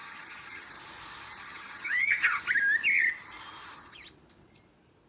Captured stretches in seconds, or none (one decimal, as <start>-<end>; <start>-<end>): 0.7-1.4; 2.4-5.1

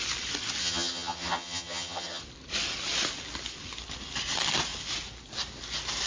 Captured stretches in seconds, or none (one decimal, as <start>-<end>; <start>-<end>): 0.0-0.6; 2.2-6.1

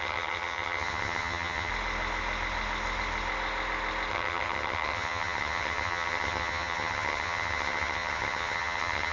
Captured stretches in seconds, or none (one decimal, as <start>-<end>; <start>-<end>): 1.7-4.1